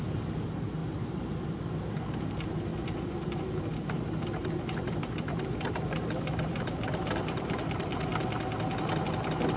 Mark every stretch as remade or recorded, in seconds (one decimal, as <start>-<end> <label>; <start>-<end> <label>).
0.0-0.8 recorded; 0.8-1.6 remade; 1.6-2.7 recorded; 2.7-4.0 remade; 4.0-4.4 recorded; 4.4-8.1 remade; 8.1-9.6 recorded